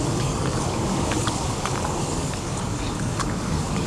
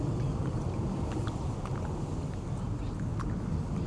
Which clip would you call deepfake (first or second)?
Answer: first